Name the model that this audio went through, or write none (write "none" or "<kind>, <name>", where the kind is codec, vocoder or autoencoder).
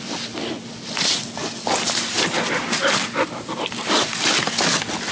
none